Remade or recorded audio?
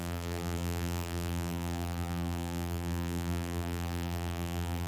remade